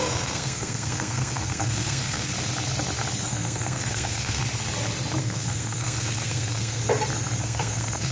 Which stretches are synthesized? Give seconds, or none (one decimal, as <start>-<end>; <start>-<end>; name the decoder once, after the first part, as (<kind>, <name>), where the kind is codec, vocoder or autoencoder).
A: 0.0-2.3 (codec, SNAC); 3.3-4.4; 5.2-6.8; 7.4-8.1